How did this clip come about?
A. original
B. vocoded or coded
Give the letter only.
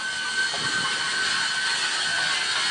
A